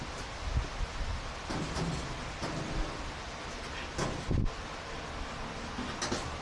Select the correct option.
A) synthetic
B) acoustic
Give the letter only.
B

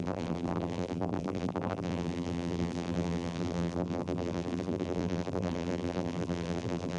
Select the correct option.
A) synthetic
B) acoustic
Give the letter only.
A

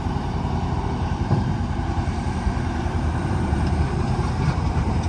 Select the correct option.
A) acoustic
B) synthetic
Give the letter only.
B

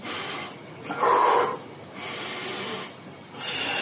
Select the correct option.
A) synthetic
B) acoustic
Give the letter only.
B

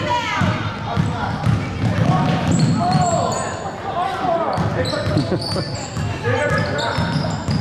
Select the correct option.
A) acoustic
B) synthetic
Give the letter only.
A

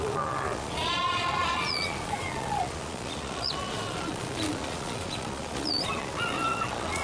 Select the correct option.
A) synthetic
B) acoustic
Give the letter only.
A